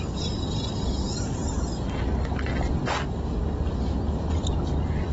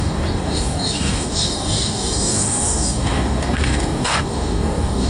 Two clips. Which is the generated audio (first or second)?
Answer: second